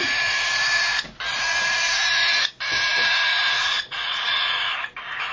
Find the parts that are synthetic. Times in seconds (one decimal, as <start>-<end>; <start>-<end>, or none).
3.6-4.6